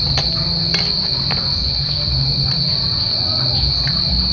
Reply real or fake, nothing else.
real